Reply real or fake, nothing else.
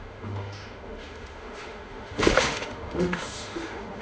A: fake